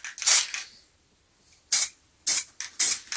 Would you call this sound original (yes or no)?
yes